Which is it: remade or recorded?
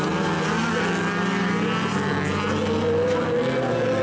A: recorded